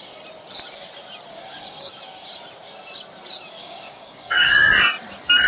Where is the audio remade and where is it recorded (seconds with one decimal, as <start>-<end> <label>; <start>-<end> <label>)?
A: 0.0-1.3 recorded; 1.3-1.9 remade; 1.9-3.6 recorded; 3.6-4.7 remade; 4.7-5.5 recorded